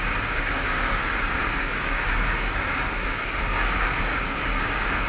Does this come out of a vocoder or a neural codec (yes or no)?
yes